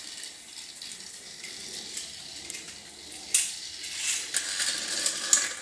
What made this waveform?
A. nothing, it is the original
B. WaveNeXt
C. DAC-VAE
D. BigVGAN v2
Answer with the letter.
A